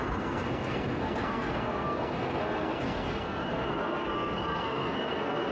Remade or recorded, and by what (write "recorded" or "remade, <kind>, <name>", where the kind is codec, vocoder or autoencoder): remade, codec, SNAC